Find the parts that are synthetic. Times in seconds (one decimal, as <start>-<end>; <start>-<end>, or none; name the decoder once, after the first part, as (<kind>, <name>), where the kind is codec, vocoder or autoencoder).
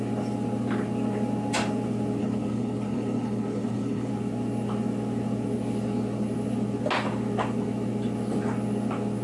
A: 2.2-4.1 (codec, HILCodec)